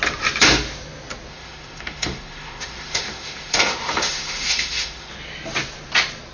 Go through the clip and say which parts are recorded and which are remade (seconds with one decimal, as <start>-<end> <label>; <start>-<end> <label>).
0.0-1.3 recorded; 1.3-5.1 remade; 5.1-6.3 recorded